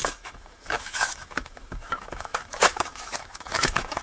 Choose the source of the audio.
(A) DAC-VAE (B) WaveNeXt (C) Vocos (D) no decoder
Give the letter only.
A